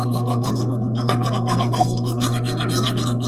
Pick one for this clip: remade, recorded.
remade